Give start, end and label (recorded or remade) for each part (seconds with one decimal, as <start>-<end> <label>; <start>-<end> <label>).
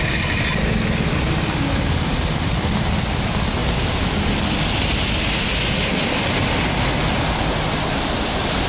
0.0-8.7 recorded